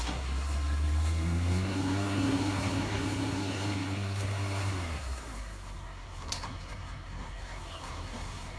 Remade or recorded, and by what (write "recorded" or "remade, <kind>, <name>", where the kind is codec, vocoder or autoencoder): remade, codec, SNAC